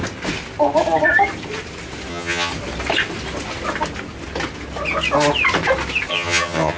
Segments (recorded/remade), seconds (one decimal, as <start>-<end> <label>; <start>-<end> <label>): 0.0-2.1 recorded; 2.1-2.5 remade; 2.5-6.1 recorded; 6.1-6.8 remade